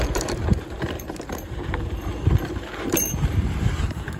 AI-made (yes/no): yes